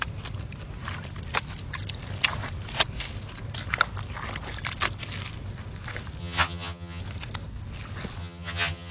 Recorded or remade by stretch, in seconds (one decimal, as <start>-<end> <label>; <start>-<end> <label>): 0.0-6.2 recorded; 6.2-7.0 remade; 7.0-8.2 recorded; 8.2-8.9 remade